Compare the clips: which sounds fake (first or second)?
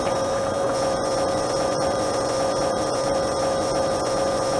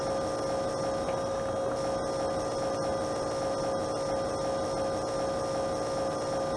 first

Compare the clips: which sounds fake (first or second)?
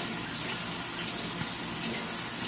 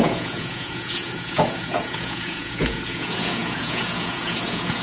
second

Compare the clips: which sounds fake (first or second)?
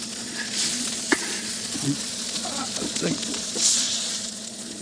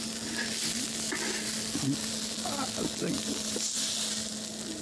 first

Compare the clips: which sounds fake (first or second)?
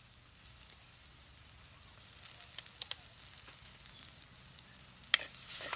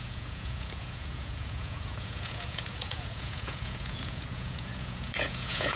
second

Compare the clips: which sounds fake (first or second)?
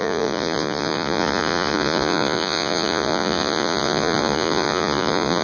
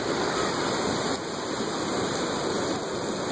first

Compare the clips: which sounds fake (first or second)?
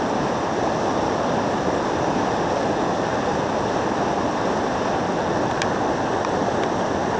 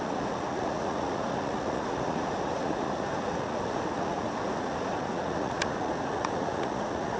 second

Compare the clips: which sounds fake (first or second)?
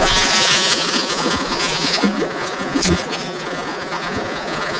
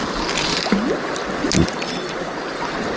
first